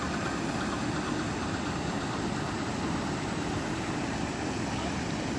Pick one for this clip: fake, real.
fake